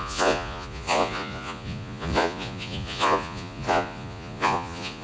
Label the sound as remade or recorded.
remade